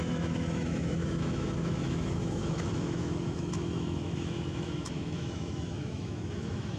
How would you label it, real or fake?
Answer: fake